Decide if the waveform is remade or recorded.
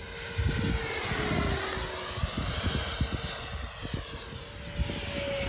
recorded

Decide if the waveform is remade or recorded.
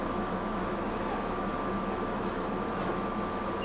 remade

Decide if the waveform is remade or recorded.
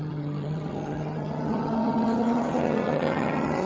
remade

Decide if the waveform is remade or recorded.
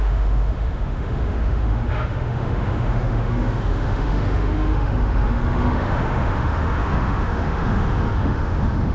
remade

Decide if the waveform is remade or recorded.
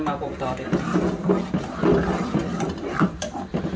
remade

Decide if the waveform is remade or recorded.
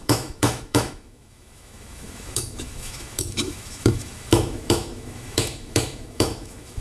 remade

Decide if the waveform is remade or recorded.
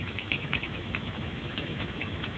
remade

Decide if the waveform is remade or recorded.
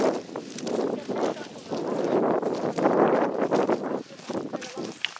recorded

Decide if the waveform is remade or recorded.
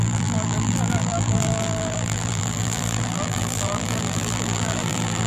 remade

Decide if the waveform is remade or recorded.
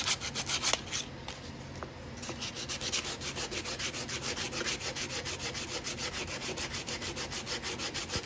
recorded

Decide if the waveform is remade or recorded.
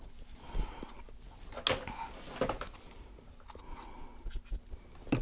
recorded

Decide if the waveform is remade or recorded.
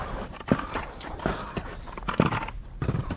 recorded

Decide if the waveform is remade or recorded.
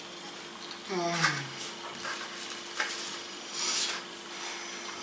recorded